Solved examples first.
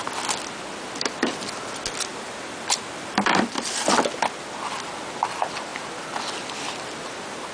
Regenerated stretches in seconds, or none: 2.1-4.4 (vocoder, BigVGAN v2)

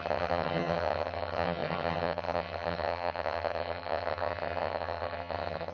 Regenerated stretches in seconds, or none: 0.0-5.7 (vocoder, HiFi-GAN)